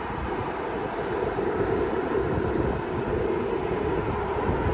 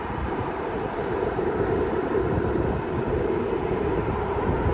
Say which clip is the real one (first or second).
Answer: first